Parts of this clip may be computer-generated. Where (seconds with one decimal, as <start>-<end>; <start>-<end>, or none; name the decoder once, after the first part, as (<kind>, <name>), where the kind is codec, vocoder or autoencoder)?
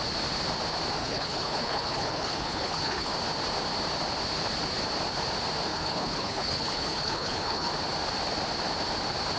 1.0-3.1 (codec, HILCodec); 5.7-7.7